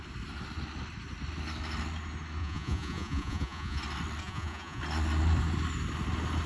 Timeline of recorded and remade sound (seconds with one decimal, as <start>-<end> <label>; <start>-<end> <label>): 0.0-2.4 recorded; 2.4-3.8 remade; 3.8-4.2 recorded; 4.2-4.8 remade; 4.8-6.5 recorded